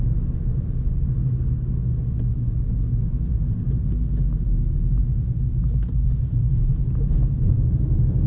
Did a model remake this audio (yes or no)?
no